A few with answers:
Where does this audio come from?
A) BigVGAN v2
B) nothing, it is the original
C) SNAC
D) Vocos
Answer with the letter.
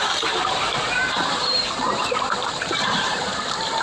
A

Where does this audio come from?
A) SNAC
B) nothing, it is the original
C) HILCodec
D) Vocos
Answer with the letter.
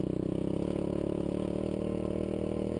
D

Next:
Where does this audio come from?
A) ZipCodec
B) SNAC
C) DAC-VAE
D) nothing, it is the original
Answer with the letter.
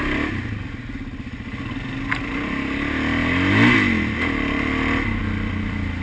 D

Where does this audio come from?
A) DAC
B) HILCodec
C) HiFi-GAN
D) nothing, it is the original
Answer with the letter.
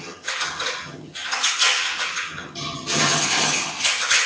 C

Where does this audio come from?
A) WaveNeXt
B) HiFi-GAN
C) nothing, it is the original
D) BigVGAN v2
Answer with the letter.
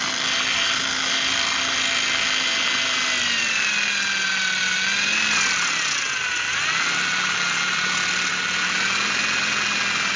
C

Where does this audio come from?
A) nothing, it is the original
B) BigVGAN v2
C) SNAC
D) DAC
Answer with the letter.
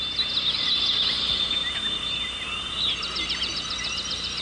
A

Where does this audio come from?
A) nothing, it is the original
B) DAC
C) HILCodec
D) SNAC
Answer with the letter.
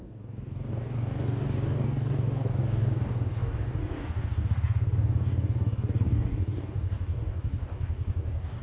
B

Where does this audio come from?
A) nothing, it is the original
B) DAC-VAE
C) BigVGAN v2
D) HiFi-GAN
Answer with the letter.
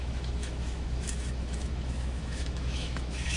B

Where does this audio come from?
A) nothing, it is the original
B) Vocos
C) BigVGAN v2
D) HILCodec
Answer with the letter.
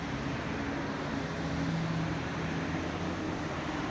A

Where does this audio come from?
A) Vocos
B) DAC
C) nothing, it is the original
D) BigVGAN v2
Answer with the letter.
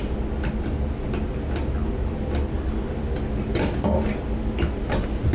C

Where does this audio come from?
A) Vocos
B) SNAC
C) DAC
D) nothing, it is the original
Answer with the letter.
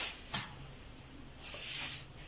D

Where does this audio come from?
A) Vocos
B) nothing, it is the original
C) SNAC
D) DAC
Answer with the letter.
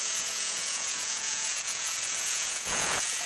A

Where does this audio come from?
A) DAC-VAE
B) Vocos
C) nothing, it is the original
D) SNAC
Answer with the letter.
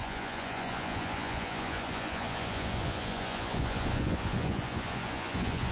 B